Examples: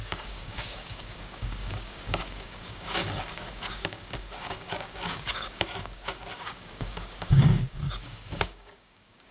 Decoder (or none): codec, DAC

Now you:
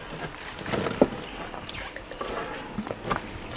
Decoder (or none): none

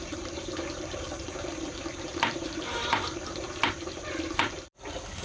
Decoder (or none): vocoder, BigVGAN v2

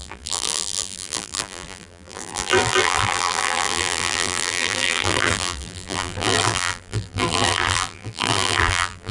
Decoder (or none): vocoder, BigVGAN v2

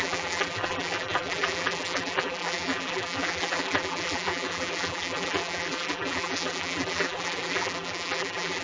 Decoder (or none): vocoder, BigVGAN v2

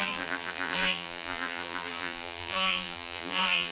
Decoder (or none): vocoder, BigVGAN v2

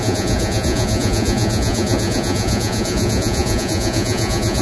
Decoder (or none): vocoder, Vocos